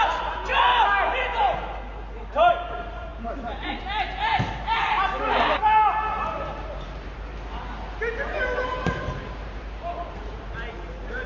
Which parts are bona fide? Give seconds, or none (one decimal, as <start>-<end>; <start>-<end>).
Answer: 0.5-2.5; 7.3-8.4